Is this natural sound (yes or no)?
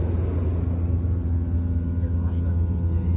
yes